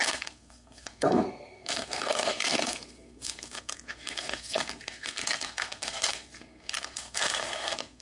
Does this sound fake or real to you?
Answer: fake